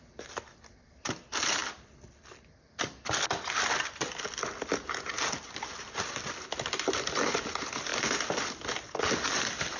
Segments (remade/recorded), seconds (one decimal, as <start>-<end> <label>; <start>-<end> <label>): 0.0-9.8 recorded